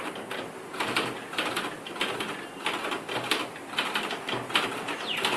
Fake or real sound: real